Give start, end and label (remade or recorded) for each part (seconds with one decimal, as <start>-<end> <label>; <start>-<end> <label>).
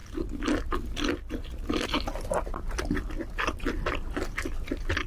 0.0-5.1 recorded